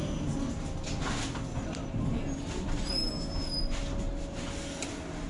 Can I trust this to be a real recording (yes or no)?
yes